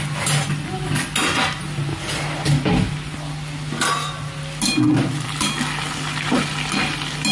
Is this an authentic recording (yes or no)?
yes